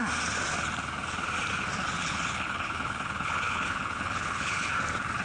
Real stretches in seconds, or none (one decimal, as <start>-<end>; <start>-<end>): 0.0-2.0; 4.7-5.2